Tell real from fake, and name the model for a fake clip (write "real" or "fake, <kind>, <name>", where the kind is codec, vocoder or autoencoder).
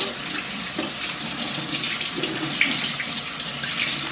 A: real